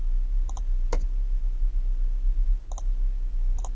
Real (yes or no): yes